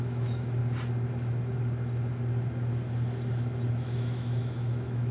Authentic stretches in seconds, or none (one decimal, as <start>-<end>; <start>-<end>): 0.6-3.7